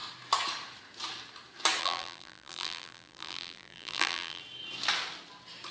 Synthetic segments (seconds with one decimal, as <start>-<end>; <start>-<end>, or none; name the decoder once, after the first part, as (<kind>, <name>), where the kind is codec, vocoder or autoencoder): 1.8-4.4 (vocoder, BigVGAN v2)